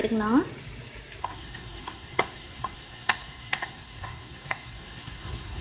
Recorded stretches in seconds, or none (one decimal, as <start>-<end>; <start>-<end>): 0.0-1.2

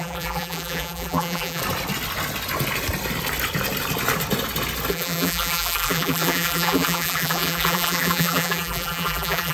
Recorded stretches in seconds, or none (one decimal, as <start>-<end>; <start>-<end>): 1.6-4.9

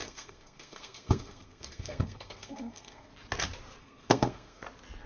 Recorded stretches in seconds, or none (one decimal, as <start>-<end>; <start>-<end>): 3.1-3.8; 4.6-5.1

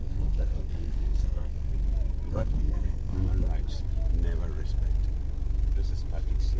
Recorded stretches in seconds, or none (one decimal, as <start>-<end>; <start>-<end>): 1.7-2.3; 3.3-6.6

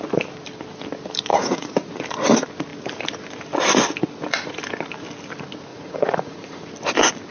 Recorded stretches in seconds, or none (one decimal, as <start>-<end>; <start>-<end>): 0.0-1.3; 1.9-5.7; 6.6-7.3

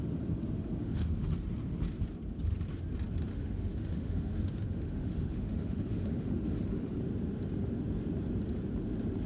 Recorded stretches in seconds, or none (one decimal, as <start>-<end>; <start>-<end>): 0.0-0.8; 1.3-3.3; 7.0-9.3

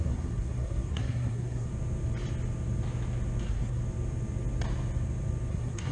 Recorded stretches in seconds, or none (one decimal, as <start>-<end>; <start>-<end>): 1.7-3.4; 3.8-5.5

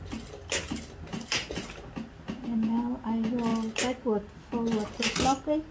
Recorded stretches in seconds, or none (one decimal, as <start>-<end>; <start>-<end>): 0.0-5.7